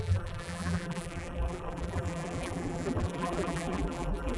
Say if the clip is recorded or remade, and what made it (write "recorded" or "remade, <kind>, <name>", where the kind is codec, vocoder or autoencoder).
remade, vocoder, BigVGAN v2